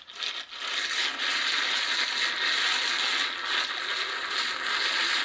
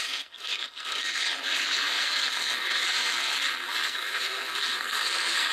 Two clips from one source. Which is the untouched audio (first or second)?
first